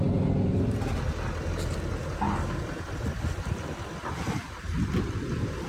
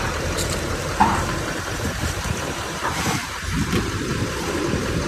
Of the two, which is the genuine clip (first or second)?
first